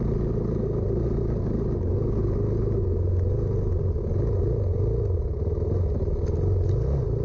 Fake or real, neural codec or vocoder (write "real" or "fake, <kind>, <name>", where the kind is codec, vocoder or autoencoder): real